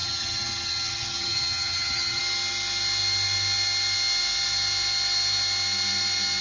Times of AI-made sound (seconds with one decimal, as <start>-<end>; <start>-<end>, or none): 0.0-2.2